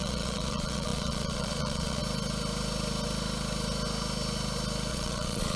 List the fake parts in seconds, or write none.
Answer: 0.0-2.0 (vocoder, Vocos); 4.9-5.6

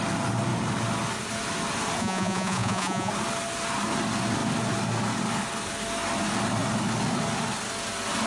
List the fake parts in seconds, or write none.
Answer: 2.0-3.1 (vocoder, Vocos)

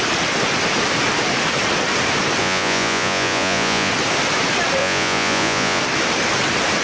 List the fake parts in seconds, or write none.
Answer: 2.4-3.9 (vocoder, Vocos); 4.8-5.8